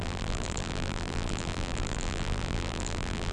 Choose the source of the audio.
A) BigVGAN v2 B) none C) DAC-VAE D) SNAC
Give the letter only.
A